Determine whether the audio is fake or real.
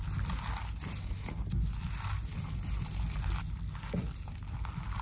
real